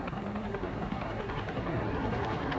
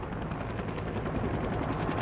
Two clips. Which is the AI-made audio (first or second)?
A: first